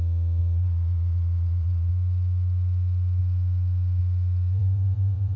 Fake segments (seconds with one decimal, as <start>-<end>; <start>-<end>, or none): 0.4-1.9; 4.6-5.4